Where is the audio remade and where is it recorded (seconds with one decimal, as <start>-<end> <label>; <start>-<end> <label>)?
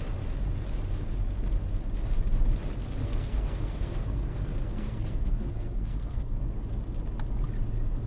0.0-3.0 recorded; 3.0-6.5 remade; 6.5-8.1 recorded